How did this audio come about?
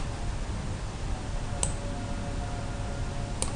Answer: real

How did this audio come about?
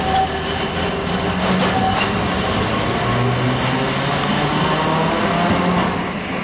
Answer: real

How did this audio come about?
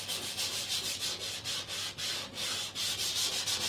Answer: real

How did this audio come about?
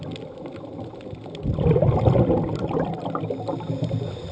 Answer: real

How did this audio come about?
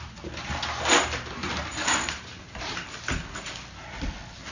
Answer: real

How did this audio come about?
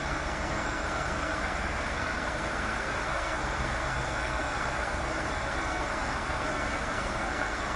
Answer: fake